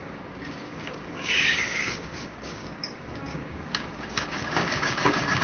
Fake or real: fake